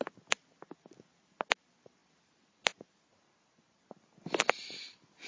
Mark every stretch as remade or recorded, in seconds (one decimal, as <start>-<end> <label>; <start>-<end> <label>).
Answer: 0.0-5.3 recorded